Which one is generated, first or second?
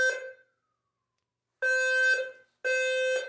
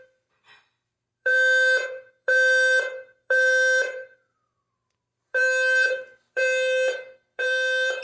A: second